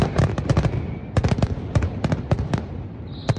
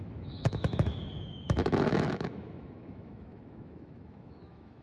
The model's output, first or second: second